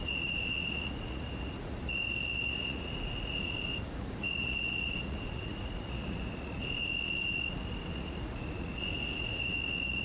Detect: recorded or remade remade